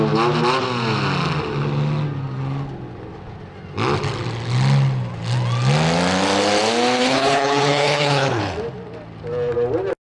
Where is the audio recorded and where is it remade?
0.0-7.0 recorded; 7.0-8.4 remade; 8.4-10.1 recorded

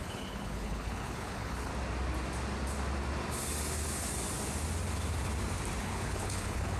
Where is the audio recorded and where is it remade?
0.0-1.7 remade; 1.7-5.8 recorded; 5.8-6.8 remade

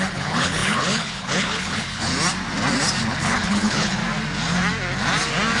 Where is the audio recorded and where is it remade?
0.0-2.1 remade; 2.1-3.0 recorded; 3.0-4.0 remade; 4.0-5.6 recorded

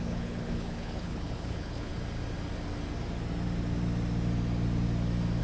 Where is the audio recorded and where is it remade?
0.0-1.9 remade; 1.9-5.4 recorded

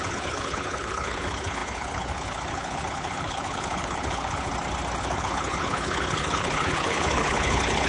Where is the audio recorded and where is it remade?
0.0-4.5 remade; 4.5-5.0 recorded; 5.0-7.9 remade

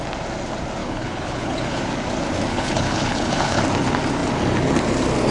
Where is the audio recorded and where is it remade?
0.0-0.8 recorded; 0.8-1.8 remade; 1.8-2.5 recorded; 2.5-3.6 remade; 3.6-5.3 recorded